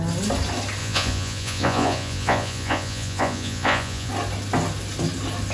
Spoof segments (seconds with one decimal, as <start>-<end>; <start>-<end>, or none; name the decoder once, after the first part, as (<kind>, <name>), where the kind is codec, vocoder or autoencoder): 0.8-4.1 (vocoder, Vocos)